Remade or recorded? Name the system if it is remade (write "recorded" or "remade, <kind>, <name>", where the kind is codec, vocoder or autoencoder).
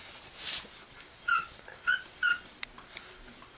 recorded